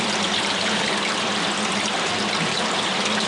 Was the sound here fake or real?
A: fake